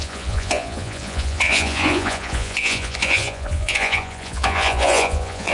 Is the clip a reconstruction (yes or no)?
yes